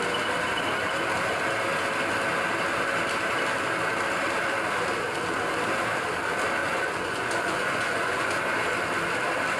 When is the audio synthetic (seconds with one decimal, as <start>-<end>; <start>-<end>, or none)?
6.6-8.4